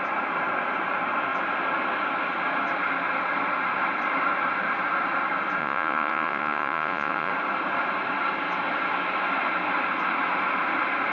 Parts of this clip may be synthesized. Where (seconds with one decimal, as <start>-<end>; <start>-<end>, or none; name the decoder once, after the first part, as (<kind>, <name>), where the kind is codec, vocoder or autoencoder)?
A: 5.6-7.3 (vocoder, Vocos)